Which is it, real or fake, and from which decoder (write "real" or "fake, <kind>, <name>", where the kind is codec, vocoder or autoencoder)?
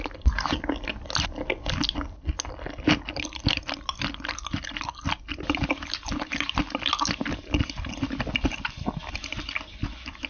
real